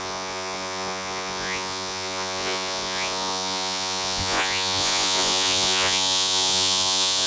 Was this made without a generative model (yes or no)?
no